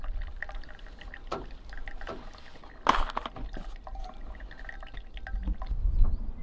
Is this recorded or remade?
recorded